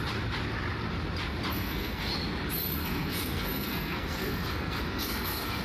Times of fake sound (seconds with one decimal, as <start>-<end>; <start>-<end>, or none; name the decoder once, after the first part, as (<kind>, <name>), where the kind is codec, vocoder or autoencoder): 1.5-2.1 (codec, SNAC); 2.8-5.6